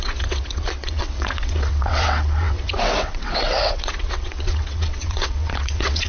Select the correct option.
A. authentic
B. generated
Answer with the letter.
B